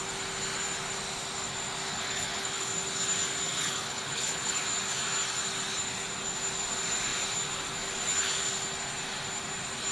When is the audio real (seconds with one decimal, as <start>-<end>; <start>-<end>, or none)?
0.0-1.9; 2.7-3.6; 4.6-9.9